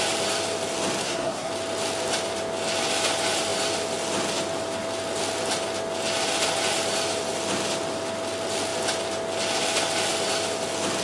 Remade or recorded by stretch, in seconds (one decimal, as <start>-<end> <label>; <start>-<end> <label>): 0.0-1.0 recorded; 1.0-1.5 remade; 1.5-11.0 recorded